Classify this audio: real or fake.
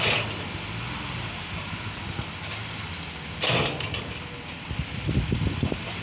real